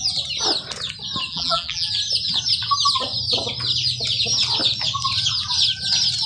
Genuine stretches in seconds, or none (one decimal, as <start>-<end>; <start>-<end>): 0.0-1.3; 1.9-6.3